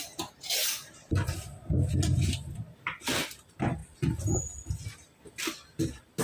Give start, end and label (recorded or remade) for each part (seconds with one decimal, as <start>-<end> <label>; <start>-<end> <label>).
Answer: 0.0-6.2 recorded